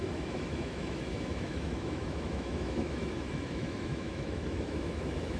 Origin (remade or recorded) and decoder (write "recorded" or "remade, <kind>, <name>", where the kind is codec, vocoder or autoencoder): remade, autoencoder, DAC-VAE